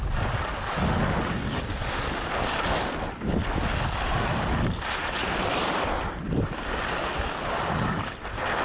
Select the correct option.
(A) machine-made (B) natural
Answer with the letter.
B